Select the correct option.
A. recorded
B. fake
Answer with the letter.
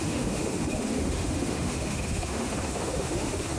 B